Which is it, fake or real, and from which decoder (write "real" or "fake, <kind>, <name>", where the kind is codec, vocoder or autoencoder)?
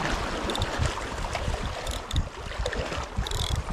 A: real